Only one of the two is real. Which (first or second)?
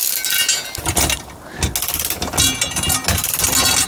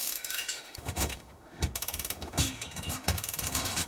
first